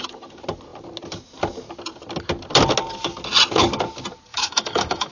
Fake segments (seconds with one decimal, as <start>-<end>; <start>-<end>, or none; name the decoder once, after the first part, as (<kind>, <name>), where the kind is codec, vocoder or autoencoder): 4.3-5.1 (autoencoder, DAC-VAE)